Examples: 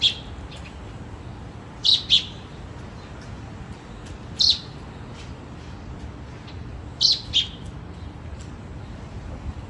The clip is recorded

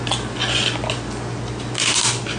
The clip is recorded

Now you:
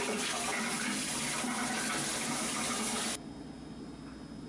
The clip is recorded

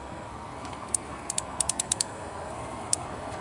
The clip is remade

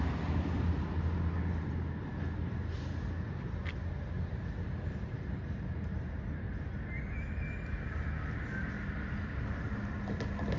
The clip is recorded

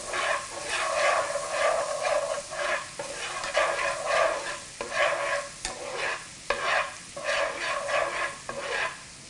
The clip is recorded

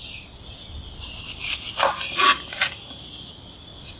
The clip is recorded